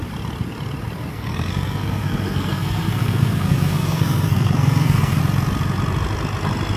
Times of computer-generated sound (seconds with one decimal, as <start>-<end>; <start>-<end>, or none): 1.1-5.2